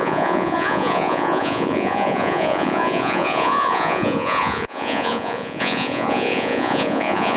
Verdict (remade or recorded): remade